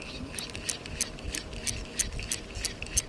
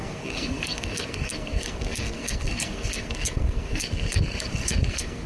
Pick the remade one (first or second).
second